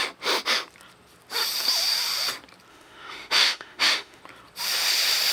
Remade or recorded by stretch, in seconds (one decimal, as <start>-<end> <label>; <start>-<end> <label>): 0.0-2.7 recorded; 2.7-4.2 remade; 4.2-5.3 recorded